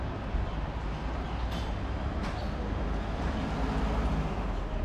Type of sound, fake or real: real